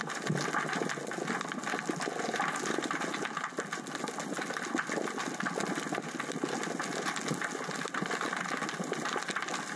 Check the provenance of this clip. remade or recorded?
recorded